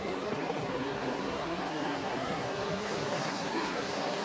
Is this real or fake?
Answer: fake